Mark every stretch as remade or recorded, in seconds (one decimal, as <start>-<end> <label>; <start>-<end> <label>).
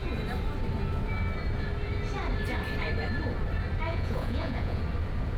0.0-3.9 recorded; 3.9-4.8 remade; 4.8-5.4 recorded